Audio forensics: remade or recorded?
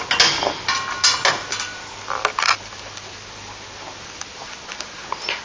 recorded